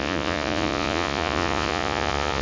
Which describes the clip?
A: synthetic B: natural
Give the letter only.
A